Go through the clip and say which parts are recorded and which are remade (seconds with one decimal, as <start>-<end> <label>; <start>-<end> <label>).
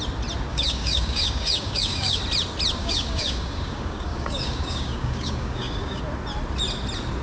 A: 0.0-0.5 recorded; 0.5-2.2 remade; 2.2-2.8 recorded; 2.8-6.0 remade; 6.0-7.2 recorded